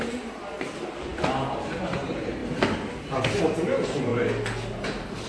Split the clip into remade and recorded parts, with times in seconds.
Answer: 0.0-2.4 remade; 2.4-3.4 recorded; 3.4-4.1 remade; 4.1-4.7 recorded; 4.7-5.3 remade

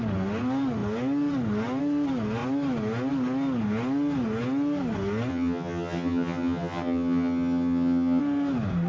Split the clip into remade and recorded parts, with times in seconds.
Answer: 0.0-5.3 recorded; 5.3-8.2 remade; 8.2-8.9 recorded

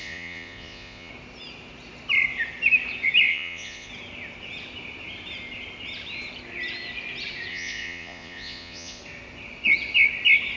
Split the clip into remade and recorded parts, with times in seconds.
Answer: 0.0-1.1 remade; 1.1-3.3 recorded; 3.3-3.9 remade; 3.9-7.5 recorded; 7.5-9.0 remade; 9.0-10.6 recorded

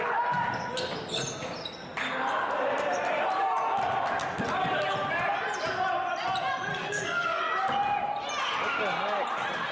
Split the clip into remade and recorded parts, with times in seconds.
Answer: 0.0-6.7 recorded; 6.7-7.4 remade; 7.4-9.7 recorded

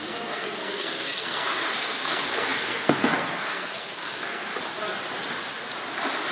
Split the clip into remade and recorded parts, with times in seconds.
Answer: 0.0-4.5 remade; 4.5-6.3 recorded

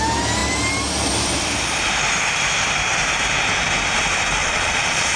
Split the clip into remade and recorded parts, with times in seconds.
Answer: 0.0-4.4 recorded; 4.4-5.2 remade

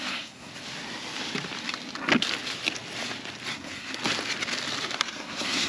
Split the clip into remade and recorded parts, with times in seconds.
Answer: 0.0-0.5 remade; 0.5-3.5 recorded; 3.5-4.0 remade; 4.0-5.0 recorded; 5.0-5.7 remade